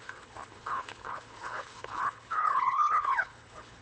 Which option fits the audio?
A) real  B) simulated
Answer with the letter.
B